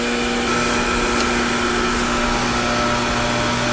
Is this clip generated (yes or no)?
no